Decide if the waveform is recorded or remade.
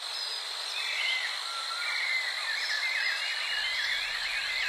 recorded